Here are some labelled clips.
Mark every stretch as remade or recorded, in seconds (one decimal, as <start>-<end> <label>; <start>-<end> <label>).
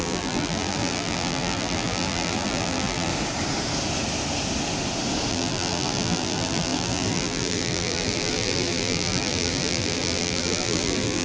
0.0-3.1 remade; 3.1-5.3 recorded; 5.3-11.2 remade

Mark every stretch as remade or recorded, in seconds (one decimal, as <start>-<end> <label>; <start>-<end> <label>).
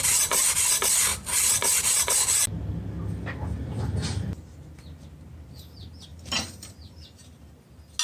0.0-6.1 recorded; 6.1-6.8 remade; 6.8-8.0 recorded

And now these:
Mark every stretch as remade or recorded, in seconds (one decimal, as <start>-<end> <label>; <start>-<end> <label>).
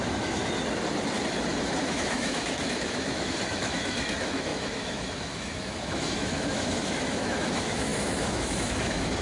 0.0-0.4 remade; 0.4-1.8 recorded; 1.8-9.2 remade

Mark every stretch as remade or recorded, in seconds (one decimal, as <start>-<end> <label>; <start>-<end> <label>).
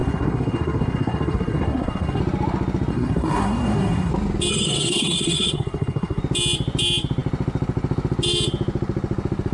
0.0-2.2 remade; 2.2-2.9 recorded; 2.9-4.1 remade; 4.1-4.5 recorded; 4.5-6.2 remade; 6.2-9.5 recorded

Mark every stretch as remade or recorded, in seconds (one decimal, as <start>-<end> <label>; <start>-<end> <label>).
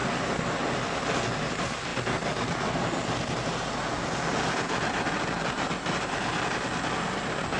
0.0-7.6 recorded